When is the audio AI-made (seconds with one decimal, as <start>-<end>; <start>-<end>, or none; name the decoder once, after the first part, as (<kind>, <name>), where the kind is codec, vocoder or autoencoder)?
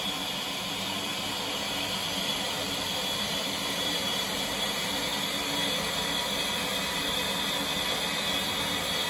0.0-5.1 (vocoder, BigVGAN v2)